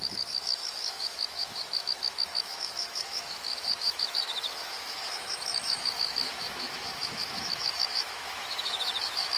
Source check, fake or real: fake